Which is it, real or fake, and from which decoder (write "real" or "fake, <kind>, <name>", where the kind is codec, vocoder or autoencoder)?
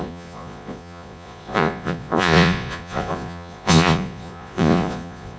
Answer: fake, vocoder, Vocos